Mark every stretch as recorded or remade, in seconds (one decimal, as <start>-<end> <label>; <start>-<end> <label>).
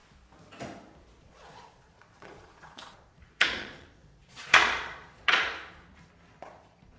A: 0.0-1.2 recorded; 1.2-5.5 remade; 5.5-6.3 recorded; 6.3-7.0 remade